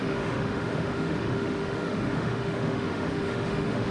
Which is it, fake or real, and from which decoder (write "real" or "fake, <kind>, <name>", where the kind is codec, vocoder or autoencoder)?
fake, autoencoder, DAC-VAE